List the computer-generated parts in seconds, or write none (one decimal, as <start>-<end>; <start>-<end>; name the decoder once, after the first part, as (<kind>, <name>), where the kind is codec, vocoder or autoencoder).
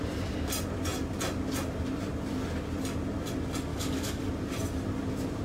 3.7-4.3 (codec, DAC)